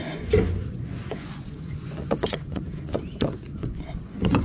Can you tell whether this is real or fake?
fake